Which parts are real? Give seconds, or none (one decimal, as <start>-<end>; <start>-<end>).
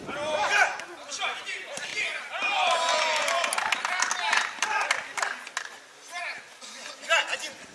0.0-7.7